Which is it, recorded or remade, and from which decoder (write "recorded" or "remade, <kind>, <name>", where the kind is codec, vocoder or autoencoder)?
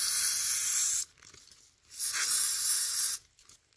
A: recorded